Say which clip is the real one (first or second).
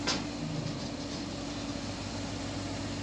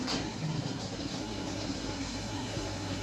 first